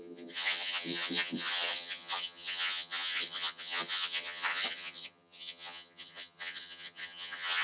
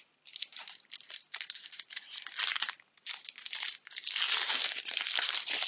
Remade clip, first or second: first